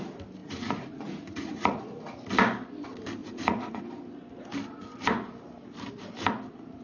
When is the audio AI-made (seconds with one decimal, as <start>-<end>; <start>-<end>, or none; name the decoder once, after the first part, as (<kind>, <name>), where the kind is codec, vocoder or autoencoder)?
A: 0.4-1.8 (vocoder, Vocos); 3.2-3.8